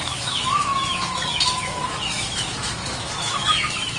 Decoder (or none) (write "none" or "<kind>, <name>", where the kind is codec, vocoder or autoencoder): autoencoder, DAC-VAE